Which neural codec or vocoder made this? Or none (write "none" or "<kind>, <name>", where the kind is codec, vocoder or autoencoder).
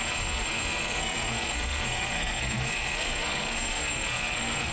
codec, SNAC